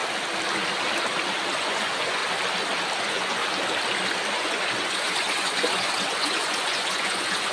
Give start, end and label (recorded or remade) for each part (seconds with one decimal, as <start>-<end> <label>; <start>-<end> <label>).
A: 0.0-1.5 recorded; 1.5-2.2 remade; 2.2-3.0 recorded; 3.0-3.4 remade; 3.4-4.3 recorded; 4.3-7.5 remade